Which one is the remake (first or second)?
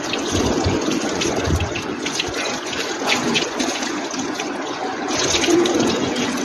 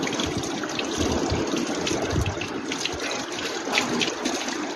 first